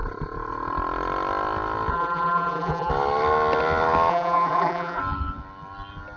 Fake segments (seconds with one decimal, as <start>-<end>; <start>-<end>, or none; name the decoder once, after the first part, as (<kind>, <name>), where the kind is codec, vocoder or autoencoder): 1.9-2.9 (vocoder, BigVGAN v2); 4.1-5.0